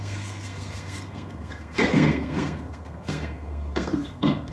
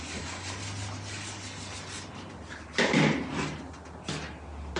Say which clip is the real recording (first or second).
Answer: second